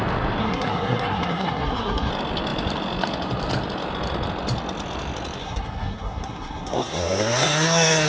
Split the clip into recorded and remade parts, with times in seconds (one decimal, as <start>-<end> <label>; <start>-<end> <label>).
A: 0.0-0.4 recorded; 0.4-2.1 remade; 2.1-5.4 recorded; 5.4-8.1 remade